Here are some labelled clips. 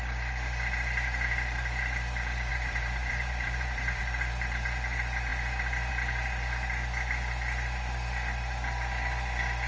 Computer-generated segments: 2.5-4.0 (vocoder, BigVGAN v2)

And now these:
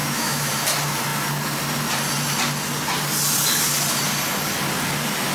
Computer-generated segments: 0.0-0.5 (autoencoder, DAC-VAE)

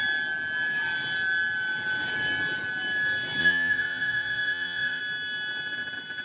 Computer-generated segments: 3.4-5.0 (vocoder, Vocos)

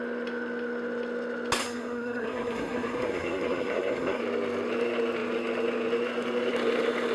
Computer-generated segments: 1.6-4.2 (codec, SNAC)

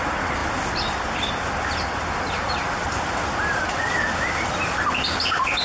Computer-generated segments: none

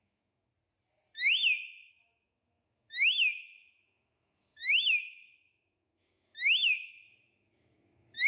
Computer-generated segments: 0.0-0.5 (autoencoder, DAC-VAE); 1.9-8.3

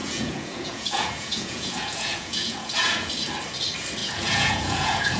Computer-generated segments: 0.0-3.1 (vocoder, Vocos); 4.0-5.2

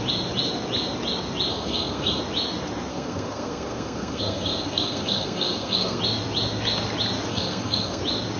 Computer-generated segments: 1.5-2.2 (codec, SNAC); 2.9-6.0; 7.3-8.0